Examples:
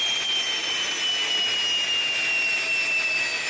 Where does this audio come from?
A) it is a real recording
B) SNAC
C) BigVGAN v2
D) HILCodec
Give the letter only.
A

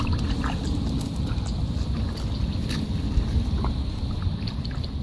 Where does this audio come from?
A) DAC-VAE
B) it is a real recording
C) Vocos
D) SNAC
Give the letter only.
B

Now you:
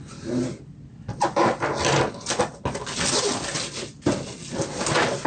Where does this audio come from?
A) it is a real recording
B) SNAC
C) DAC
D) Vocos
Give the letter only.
A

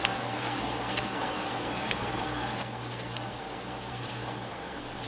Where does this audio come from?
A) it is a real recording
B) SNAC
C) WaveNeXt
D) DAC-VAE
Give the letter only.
B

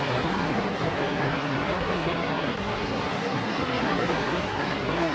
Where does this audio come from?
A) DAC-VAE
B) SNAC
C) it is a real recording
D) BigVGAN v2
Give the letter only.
B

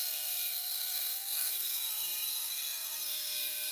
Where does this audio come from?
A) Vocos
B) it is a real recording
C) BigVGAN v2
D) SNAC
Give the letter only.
D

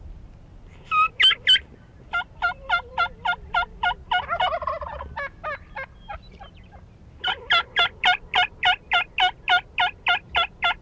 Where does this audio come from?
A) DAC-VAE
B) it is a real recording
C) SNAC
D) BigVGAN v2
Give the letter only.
B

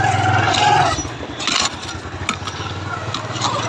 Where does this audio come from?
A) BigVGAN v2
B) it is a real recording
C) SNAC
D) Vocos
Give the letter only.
B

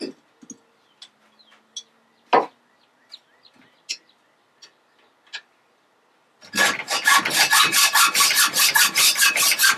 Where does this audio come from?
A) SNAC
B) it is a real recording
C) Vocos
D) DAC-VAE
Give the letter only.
B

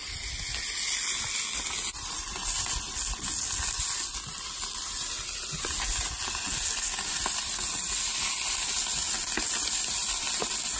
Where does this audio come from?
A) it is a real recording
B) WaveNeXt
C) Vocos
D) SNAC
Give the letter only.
A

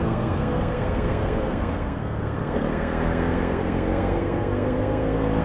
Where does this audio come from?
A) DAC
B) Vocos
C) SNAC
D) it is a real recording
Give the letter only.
C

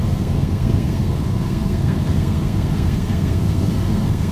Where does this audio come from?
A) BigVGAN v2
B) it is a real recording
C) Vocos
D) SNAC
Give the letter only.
D